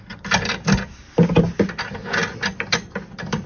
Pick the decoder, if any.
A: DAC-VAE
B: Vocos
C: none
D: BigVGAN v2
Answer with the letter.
C